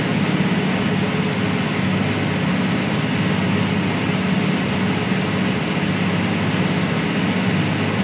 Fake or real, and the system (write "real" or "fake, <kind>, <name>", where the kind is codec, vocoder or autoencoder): real